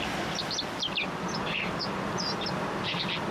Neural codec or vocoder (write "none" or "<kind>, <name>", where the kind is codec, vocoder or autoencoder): none